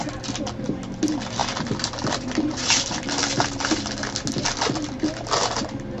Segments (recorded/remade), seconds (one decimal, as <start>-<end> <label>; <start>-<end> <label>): 0.0-1.4 recorded; 1.4-3.8 remade; 3.8-6.0 recorded